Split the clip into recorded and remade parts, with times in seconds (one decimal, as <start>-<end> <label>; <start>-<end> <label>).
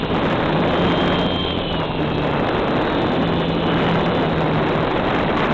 0.0-1.4 recorded; 1.4-2.1 remade; 2.1-4.9 recorded; 4.9-5.5 remade